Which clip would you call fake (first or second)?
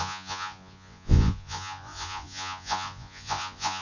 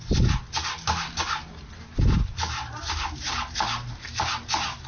first